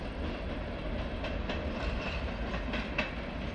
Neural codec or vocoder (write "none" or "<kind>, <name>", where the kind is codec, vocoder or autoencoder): none